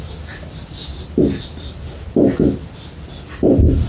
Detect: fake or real real